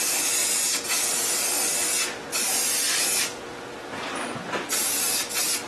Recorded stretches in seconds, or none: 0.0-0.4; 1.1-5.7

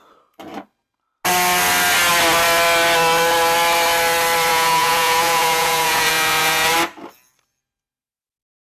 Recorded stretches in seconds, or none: 0.0-4.5; 6.7-8.6

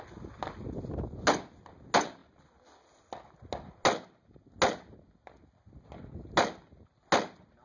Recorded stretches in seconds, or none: 0.0-7.6

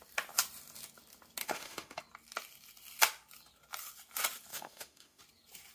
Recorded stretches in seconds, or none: 0.0-1.4; 2.0-4.5; 5.2-5.7

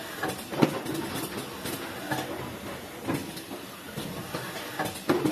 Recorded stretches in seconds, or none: 0.0-3.2; 3.8-5.3

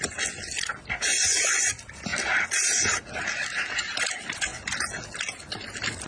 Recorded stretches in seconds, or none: 0.0-6.1

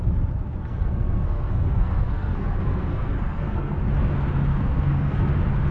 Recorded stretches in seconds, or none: 0.0-0.6; 3.7-4.5; 5.3-5.7